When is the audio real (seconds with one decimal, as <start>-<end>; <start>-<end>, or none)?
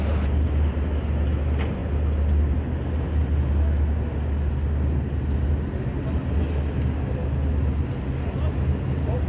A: 0.0-9.3